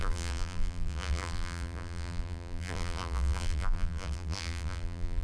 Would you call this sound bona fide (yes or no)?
no